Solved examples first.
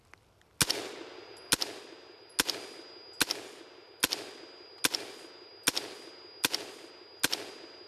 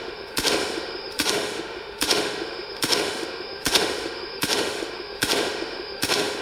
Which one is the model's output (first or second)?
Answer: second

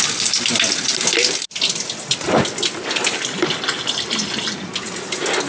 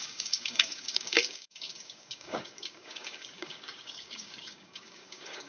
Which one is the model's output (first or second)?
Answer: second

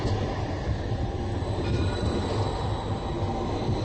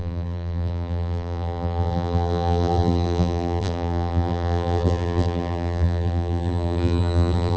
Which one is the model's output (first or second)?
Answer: second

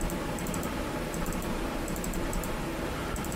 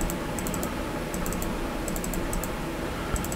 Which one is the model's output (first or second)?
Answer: first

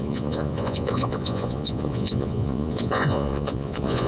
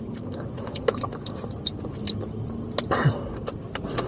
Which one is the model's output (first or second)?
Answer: first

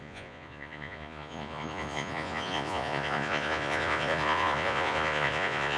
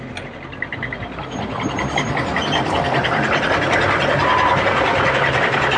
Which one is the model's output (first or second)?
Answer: first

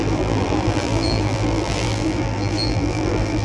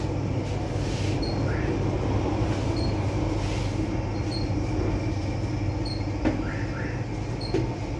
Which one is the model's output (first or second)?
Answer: first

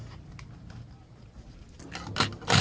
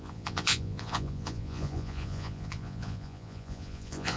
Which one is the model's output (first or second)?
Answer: second